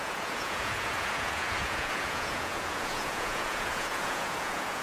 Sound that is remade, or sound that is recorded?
remade